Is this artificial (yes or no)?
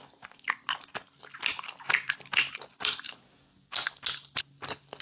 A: no